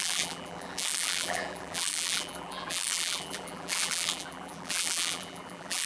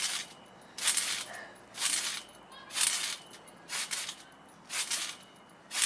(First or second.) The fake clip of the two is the first